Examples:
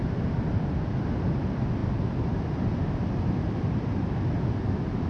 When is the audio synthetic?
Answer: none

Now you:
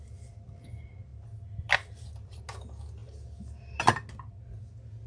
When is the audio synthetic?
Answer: none

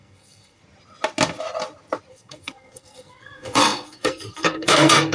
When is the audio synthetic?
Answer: 0.0-0.6 (codec, SNAC); 2.1-5.1

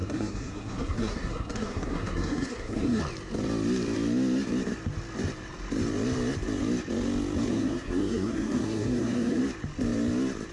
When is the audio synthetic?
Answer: 0.0-3.0 (codec, SNAC); 7.5-9.4

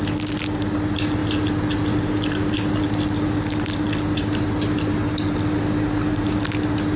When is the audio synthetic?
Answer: none

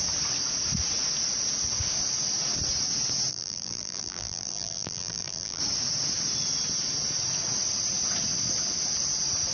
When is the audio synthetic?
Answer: 3.3-5.6 (vocoder, BigVGAN v2)